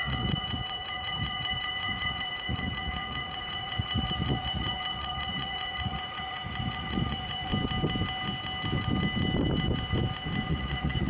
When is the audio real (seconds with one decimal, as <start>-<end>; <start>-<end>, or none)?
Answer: 7.5-10.5